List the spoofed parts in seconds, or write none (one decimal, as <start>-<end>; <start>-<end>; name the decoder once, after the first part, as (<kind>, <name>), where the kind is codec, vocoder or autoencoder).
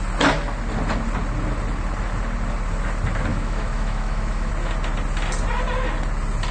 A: 3.3-4.5 (autoencoder, DAC-VAE)